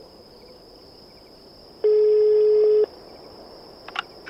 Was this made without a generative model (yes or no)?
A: yes